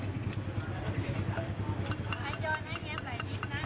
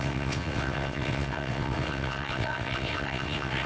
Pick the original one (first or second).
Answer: first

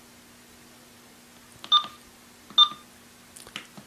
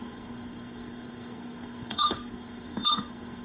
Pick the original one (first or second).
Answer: first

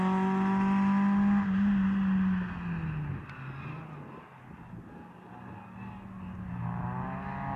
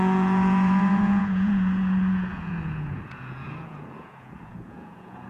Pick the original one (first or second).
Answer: first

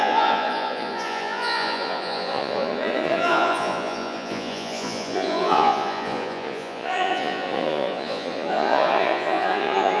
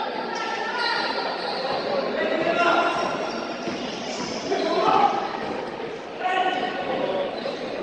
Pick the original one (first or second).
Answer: second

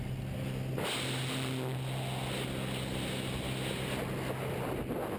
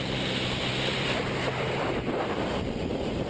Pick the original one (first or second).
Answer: first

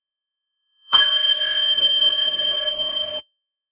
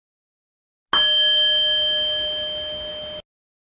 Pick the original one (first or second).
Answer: second